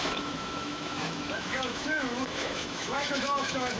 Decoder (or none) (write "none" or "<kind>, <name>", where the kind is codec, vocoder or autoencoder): autoencoder, DAC-VAE